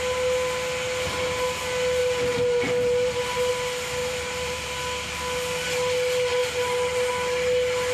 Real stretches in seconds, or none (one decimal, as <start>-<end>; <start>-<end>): 0.0-2.0; 3.5-4.0; 4.7-7.9